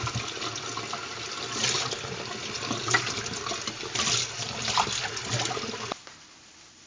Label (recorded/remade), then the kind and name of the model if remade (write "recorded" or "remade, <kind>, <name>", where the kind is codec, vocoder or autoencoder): recorded